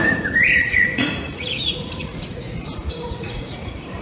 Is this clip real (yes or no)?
no